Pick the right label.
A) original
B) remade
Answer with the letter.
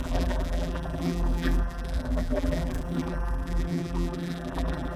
B